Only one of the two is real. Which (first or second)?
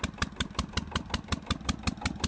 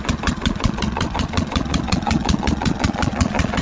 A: first